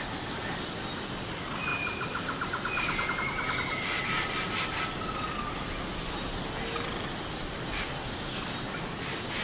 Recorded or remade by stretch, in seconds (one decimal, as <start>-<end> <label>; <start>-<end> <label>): 0.0-9.4 recorded